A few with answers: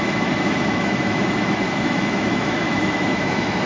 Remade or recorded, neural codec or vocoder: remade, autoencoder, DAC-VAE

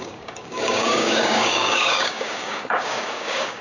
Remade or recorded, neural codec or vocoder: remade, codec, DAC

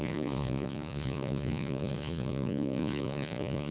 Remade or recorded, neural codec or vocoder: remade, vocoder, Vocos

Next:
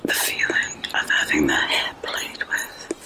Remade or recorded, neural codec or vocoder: recorded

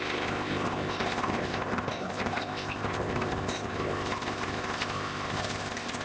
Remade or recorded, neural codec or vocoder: remade, codec, ZipCodec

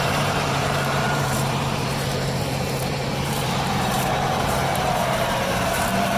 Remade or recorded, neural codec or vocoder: remade, vocoder, BigVGAN v2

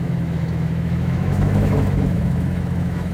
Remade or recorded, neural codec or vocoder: remade, autoencoder, DAC-VAE